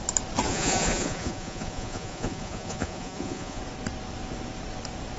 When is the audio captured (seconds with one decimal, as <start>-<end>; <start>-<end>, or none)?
0.0-0.5; 3.6-5.2